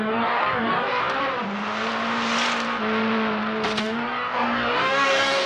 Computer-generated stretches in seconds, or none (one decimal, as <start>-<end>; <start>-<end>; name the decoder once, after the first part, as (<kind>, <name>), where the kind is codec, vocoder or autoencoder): 0.0-1.0 (codec, DAC); 3.8-5.5